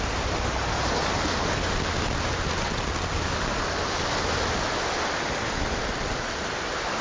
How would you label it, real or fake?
real